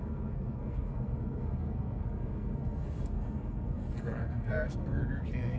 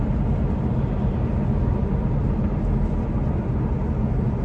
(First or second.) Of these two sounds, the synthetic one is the first